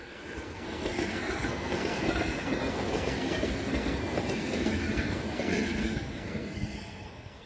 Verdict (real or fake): fake